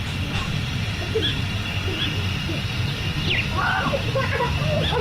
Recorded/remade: recorded